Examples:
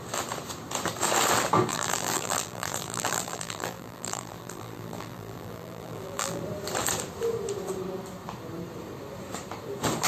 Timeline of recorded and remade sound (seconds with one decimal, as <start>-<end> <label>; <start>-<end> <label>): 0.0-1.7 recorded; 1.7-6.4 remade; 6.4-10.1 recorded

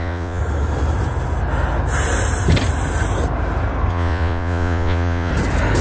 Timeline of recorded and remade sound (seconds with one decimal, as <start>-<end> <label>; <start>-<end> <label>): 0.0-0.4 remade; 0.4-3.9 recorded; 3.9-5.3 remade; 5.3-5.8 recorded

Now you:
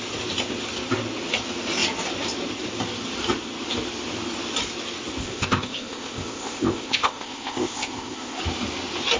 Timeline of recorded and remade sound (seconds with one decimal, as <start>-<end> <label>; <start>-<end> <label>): 0.0-5.2 recorded; 5.2-8.4 remade; 8.4-9.2 recorded